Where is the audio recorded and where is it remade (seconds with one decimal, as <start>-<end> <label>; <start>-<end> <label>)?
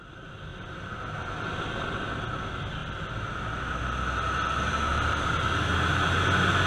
0.0-4.9 recorded; 4.9-5.4 remade; 5.4-6.7 recorded